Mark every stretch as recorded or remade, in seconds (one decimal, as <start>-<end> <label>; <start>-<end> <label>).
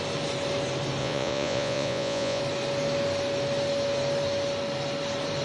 0.0-1.0 recorded; 1.0-2.4 remade; 2.4-5.4 recorded